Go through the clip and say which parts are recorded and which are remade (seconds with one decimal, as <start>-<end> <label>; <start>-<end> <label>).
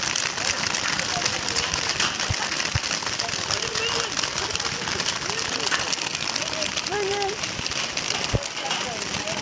0.0-9.4 recorded